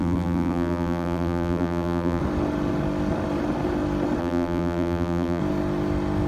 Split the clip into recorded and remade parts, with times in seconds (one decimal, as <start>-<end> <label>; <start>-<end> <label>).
0.0-2.2 remade; 2.2-4.2 recorded; 4.2-5.4 remade; 5.4-6.3 recorded